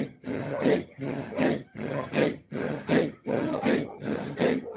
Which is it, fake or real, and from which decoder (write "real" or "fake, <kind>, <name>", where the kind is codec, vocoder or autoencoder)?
fake, vocoder, HiFi-GAN